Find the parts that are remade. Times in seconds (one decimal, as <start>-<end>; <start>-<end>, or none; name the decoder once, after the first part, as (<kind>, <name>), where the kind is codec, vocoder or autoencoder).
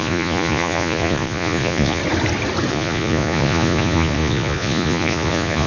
0.0-2.0 (vocoder, Vocos); 2.7-5.7